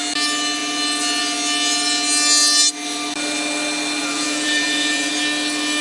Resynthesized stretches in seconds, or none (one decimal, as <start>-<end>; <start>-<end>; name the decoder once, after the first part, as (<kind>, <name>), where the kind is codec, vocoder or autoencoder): 4.0-5.1 (vocoder, Vocos)